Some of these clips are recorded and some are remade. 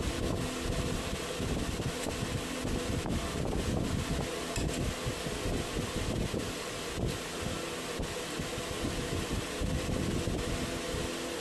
recorded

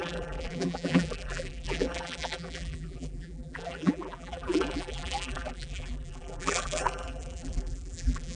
remade